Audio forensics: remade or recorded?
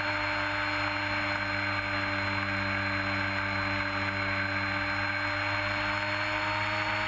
recorded